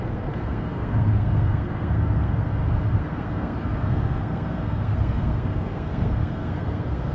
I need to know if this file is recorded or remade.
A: remade